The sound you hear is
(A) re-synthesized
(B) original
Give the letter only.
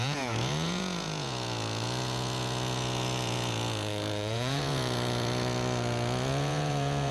A